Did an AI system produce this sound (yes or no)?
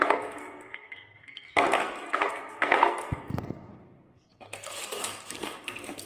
yes